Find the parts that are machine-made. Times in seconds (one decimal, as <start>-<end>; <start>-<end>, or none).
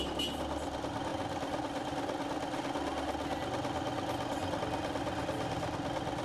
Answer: none